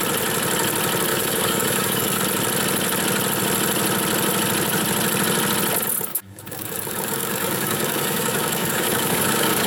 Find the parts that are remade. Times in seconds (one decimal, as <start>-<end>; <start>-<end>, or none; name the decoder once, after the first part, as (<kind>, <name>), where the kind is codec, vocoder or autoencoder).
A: 1.1-2.2 (codec, DAC); 6.1-9.7